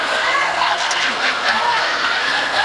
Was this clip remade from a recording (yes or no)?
yes